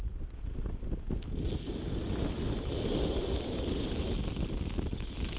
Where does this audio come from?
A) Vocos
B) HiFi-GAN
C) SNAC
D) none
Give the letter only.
D